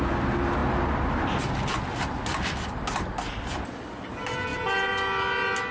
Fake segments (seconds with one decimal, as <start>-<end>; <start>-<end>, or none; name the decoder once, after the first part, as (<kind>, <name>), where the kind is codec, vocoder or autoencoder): none